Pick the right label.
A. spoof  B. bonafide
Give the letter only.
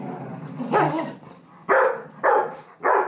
B